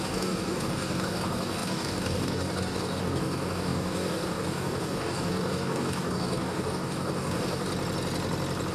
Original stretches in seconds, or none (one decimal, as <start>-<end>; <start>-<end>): 7.7-8.7